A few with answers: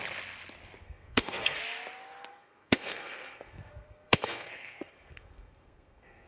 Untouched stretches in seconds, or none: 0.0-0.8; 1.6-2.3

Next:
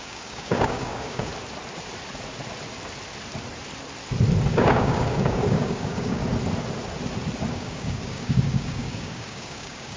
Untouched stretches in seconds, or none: 1.3-4.5; 6.2-7.5

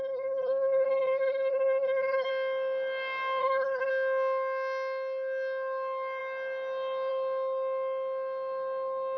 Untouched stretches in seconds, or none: 2.3-3.4; 3.9-9.2

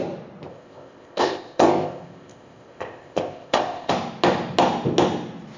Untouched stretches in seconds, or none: 0.0-0.5; 3.9-5.6